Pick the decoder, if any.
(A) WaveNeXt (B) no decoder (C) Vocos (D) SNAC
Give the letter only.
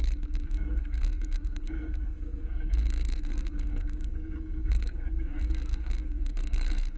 D